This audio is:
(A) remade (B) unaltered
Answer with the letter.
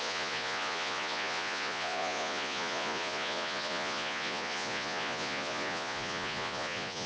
A